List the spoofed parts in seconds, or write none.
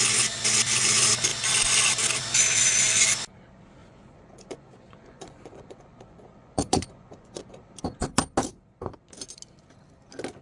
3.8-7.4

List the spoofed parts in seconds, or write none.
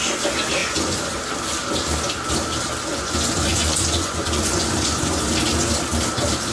0.6-1.2; 2.9-5.2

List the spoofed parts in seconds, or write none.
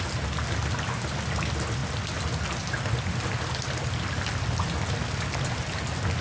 none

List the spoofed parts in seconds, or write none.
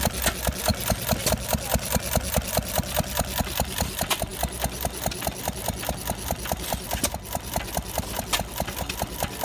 none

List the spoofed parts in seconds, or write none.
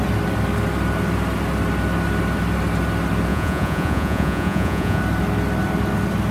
3.3-5.0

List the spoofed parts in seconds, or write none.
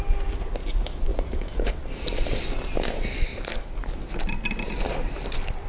1.1-1.8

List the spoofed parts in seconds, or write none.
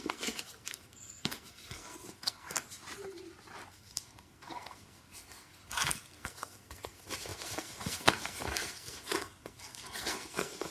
0.0-2.8; 3.7-10.7